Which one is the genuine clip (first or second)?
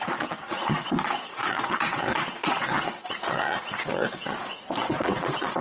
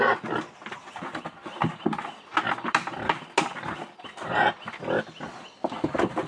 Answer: second